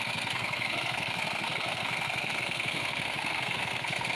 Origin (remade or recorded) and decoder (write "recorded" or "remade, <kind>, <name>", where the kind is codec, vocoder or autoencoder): remade, codec, SNAC